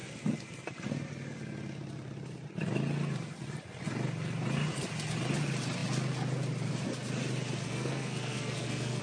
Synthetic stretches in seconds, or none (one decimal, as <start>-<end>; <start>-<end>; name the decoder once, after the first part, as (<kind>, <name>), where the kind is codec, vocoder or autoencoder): 7.6-9.0 (codec, SNAC)